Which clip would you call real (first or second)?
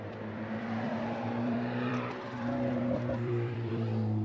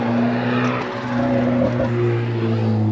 second